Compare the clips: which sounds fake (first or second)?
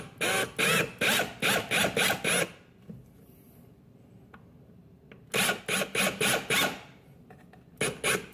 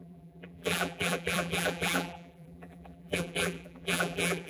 second